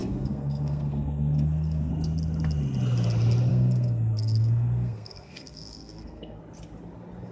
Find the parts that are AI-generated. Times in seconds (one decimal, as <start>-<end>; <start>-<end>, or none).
0.0-1.9; 3.5-6.4